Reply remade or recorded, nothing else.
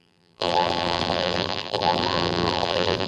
remade